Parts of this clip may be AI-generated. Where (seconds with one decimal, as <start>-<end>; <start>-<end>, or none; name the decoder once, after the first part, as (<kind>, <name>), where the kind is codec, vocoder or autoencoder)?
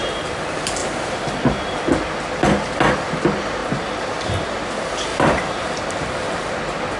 0.8-1.8 (vocoder, BigVGAN v2); 3.6-4.4; 5.1-6.4